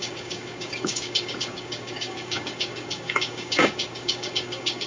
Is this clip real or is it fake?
fake